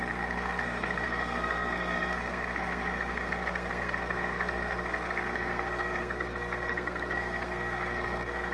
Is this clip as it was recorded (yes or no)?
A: no